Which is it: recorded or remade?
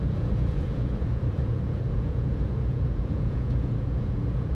remade